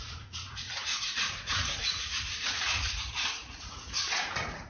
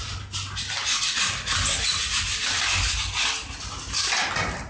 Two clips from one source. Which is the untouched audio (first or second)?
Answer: second